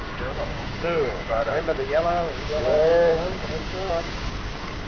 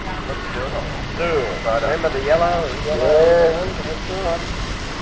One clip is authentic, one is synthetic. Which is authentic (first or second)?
second